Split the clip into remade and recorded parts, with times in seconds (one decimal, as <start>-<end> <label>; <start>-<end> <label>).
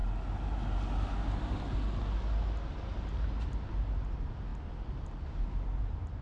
0.0-6.2 recorded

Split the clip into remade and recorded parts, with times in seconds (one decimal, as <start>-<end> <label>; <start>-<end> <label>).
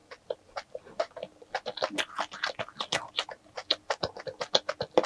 0.0-5.1 recorded